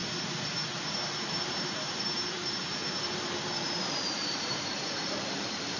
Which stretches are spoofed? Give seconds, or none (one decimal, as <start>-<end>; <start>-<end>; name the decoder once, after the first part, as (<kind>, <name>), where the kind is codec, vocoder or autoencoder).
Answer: 0.0-5.8 (vocoder, BigVGAN v2)